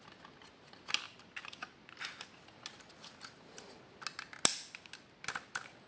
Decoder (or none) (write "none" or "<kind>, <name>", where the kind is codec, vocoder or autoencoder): none